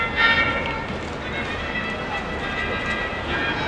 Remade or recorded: recorded